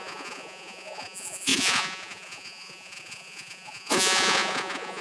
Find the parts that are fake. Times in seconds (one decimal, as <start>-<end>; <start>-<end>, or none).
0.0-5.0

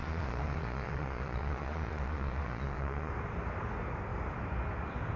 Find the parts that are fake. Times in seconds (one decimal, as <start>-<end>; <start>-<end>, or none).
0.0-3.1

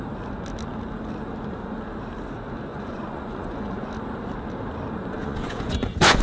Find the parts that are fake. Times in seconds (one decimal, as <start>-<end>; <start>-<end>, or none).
2.7-3.9; 5.2-6.2

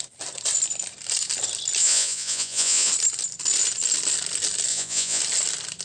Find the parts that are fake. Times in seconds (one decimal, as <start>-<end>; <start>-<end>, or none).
1.8-2.9; 4.7-5.2

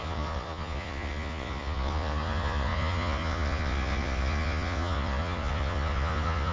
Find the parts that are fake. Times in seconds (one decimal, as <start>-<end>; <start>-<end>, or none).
0.0-6.5

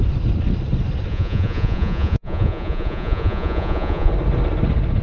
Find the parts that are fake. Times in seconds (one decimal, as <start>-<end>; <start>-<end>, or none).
1.1-4.1